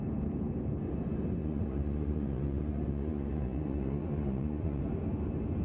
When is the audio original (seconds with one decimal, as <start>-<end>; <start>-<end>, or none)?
0.0-1.4; 4.8-5.6